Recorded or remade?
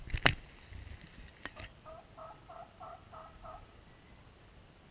recorded